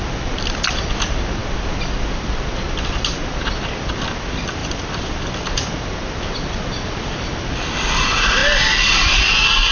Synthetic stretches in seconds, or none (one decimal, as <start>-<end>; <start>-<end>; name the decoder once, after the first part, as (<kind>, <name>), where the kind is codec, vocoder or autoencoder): none

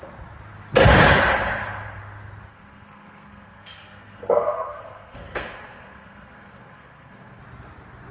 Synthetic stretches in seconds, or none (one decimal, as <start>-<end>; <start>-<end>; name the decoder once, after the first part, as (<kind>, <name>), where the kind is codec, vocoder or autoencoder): 2.5-7.4 (codec, SNAC)